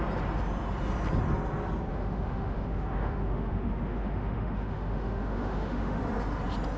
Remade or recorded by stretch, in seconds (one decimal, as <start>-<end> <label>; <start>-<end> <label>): 0.0-1.9 recorded; 1.9-6.0 remade; 6.0-6.8 recorded